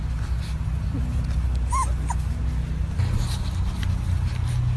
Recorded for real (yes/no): yes